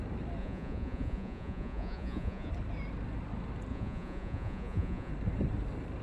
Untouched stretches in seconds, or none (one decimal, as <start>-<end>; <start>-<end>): 0.0-0.4; 2.5-3.7; 5.1-6.0